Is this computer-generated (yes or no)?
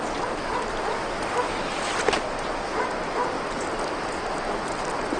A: no